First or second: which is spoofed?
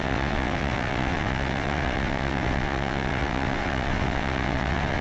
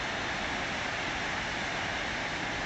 first